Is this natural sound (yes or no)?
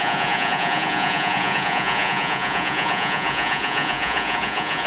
no